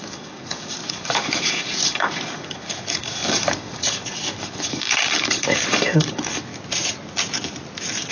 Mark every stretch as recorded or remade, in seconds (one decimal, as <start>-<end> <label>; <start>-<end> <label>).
0.0-6.5 remade; 6.5-8.1 recorded